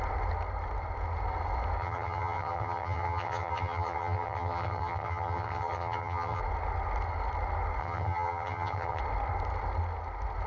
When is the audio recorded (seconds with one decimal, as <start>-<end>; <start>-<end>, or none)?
0.0-1.8; 6.4-7.8; 9.0-10.5